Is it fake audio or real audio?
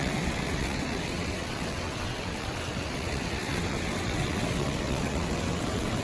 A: fake